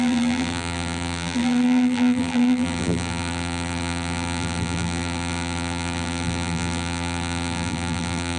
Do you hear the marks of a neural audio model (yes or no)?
yes